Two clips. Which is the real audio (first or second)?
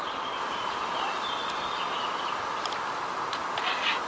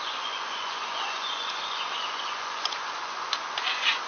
first